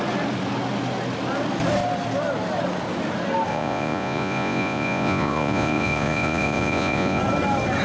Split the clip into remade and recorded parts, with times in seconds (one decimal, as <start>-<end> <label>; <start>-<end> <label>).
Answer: 0.0-3.5 recorded; 3.5-7.2 remade; 7.2-7.8 recorded